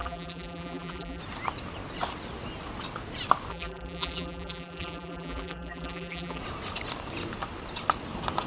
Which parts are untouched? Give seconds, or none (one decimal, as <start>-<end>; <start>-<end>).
1.2-3.5; 6.4-8.5